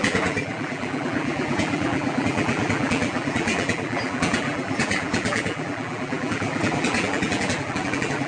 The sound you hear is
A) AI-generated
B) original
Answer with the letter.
A